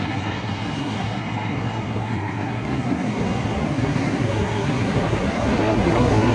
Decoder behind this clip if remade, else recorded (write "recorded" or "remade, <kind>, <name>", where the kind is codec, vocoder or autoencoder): remade, codec, SNAC